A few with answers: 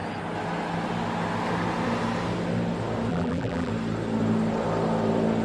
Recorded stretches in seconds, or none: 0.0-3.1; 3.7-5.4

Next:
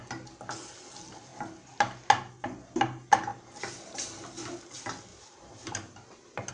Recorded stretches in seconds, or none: 0.0-3.3; 4.1-5.1

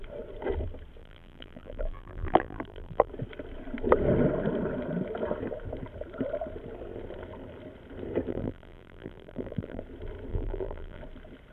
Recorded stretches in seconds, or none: 0.0-1.0; 3.1-8.3; 9.8-10.3; 11.0-11.5

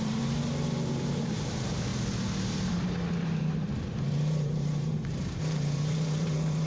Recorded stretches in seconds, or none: 1.9-3.4